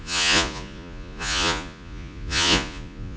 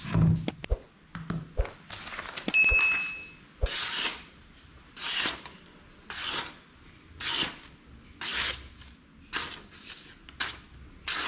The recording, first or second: second